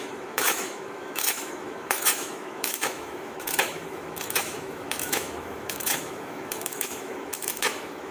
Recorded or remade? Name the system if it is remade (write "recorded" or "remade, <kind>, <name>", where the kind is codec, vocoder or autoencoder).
remade, autoencoder, DAC-VAE